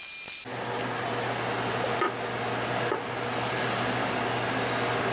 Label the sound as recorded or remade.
recorded